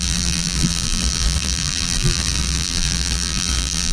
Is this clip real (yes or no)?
no